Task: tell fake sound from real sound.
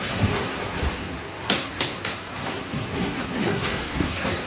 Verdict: fake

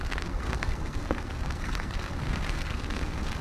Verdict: fake